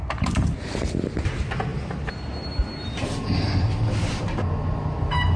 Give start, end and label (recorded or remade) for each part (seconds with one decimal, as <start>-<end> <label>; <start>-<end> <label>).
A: 0.0-5.4 recorded